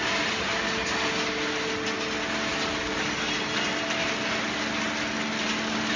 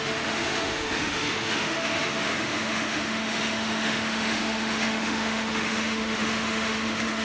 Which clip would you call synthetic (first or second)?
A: second